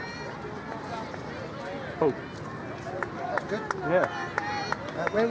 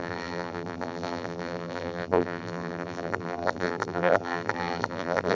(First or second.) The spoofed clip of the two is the second